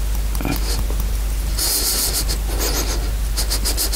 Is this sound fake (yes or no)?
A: no